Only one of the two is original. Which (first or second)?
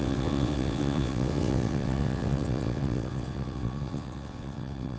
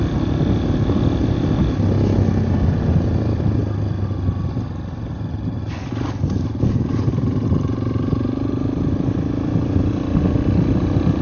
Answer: second